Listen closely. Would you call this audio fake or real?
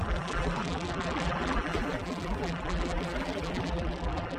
fake